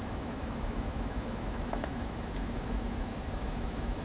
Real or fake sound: fake